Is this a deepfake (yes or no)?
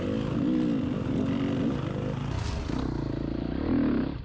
no